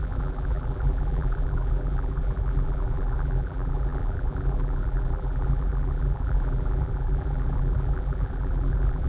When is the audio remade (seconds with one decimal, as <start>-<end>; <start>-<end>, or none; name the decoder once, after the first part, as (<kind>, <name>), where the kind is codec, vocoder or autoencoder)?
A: 0.0-9.1 (vocoder, BigVGAN v2)